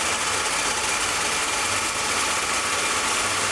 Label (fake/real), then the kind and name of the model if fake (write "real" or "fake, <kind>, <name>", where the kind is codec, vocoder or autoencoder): real